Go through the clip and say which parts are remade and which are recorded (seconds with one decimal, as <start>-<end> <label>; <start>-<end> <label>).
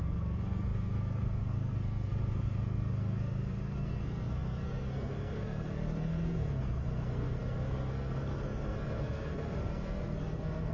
0.0-10.7 remade